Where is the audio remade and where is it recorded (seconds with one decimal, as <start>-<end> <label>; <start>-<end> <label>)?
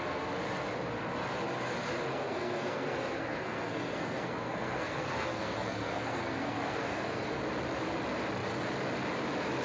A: 0.0-2.1 recorded; 2.1-7.4 remade; 7.4-9.6 recorded